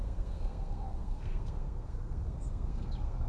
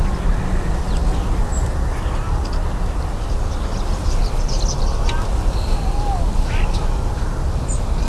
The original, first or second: second